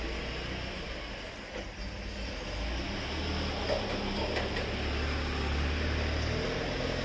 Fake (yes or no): no